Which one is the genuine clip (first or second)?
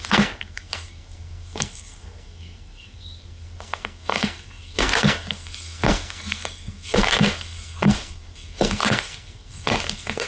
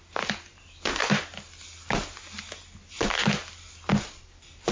second